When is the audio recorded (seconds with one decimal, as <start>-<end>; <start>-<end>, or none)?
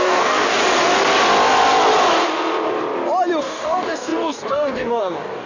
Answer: 0.6-3.4